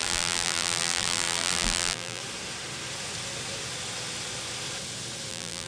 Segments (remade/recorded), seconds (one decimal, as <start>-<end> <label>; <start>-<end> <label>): 0.0-2.2 remade; 2.2-5.3 recorded; 5.3-5.7 remade